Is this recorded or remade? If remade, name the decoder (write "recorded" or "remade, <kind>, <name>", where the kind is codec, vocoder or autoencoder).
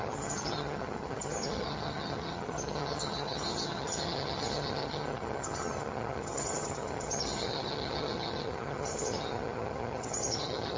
remade, vocoder, HiFi-GAN